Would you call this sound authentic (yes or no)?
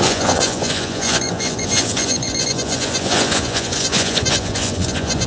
no